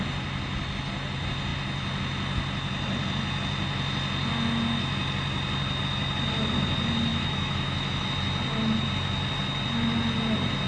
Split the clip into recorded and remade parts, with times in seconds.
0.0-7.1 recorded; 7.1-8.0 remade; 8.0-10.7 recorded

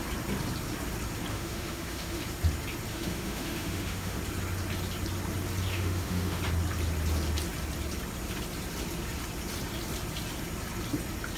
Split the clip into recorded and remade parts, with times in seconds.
0.0-1.3 recorded; 1.3-2.2 remade; 2.2-2.9 recorded; 2.9-4.2 remade; 4.2-5.7 recorded; 5.7-6.4 remade; 6.4-11.4 recorded

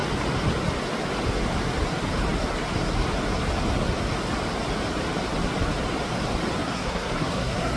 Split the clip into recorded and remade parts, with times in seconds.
0.0-6.6 recorded; 6.6-7.8 remade

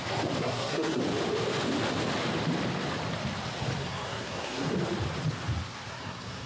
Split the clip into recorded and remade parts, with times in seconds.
0.0-0.4 recorded; 0.4-1.0 remade; 1.0-3.8 recorded; 3.8-4.7 remade; 4.7-5.9 recorded; 5.9-6.5 remade

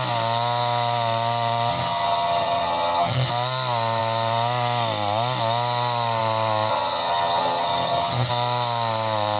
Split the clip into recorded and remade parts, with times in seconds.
0.0-1.7 recorded; 1.7-3.3 remade; 3.3-6.7 recorded; 6.7-8.3 remade; 8.3-9.4 recorded

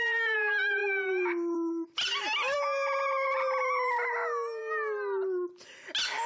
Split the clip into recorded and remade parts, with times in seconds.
0.0-6.3 recorded

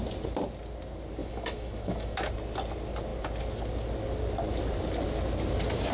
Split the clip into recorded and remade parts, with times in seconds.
0.0-1.2 recorded; 1.2-2.3 remade; 2.3-5.9 recorded